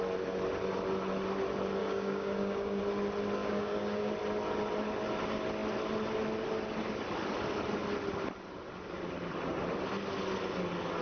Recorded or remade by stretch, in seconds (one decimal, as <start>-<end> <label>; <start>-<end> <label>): 0.0-1.8 recorded; 1.8-2.8 remade; 2.8-3.4 recorded; 3.4-4.1 remade; 4.1-11.0 recorded